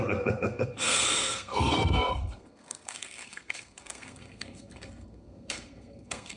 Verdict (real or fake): fake